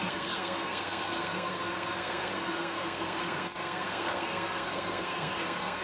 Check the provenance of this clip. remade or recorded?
remade